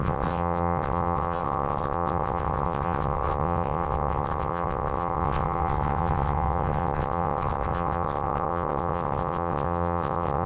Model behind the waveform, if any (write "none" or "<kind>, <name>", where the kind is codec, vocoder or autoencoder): vocoder, WaveNeXt